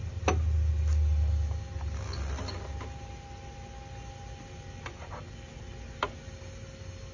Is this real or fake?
real